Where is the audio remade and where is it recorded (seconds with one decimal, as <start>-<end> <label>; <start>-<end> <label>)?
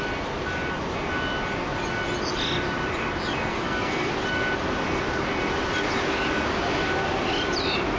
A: 0.0-3.5 recorded; 3.5-4.1 remade; 4.1-8.0 recorded